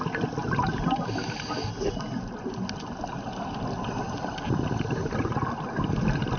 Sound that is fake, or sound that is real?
real